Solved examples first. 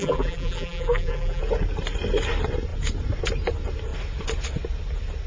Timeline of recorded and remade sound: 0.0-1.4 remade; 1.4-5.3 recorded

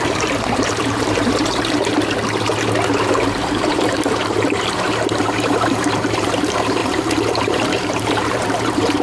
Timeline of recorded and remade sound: 0.0-1.9 remade; 1.9-3.1 recorded; 3.1-9.0 remade

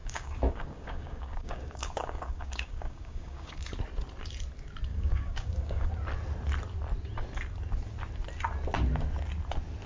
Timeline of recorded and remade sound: 0.0-3.6 remade; 3.6-4.9 recorded; 4.9-5.9 remade; 5.9-9.9 recorded

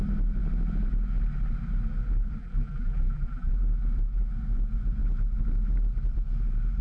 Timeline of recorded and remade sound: 0.0-2.4 recorded; 2.4-3.5 remade; 3.5-6.8 recorded

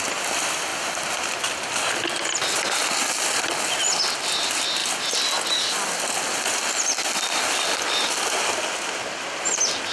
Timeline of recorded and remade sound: 0.0-9.9 recorded

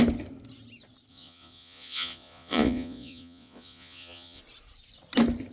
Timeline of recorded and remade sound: 0.0-1.1 recorded; 1.1-4.4 remade; 4.4-5.5 recorded